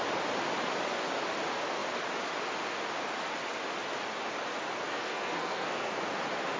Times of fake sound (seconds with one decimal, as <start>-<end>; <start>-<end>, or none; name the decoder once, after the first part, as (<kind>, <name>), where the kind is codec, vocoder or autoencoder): 4.9-5.9 (codec, SNAC)